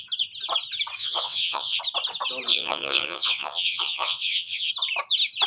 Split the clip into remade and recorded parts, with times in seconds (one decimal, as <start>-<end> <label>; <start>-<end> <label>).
0.0-1.0 recorded; 1.0-1.8 remade; 1.8-2.5 recorded; 2.5-4.7 remade; 4.7-5.5 recorded